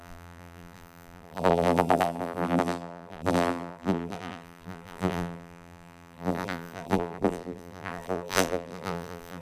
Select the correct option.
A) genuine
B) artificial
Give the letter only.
B